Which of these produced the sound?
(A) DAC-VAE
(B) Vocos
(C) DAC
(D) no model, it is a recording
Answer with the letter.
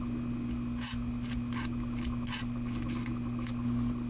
D